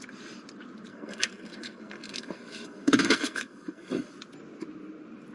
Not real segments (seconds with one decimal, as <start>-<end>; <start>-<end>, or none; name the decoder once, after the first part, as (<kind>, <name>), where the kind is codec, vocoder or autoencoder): 0.9-4.1 (codec, SNAC)